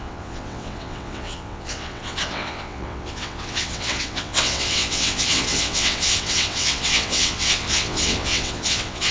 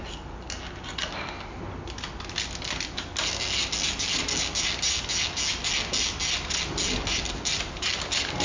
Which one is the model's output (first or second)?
first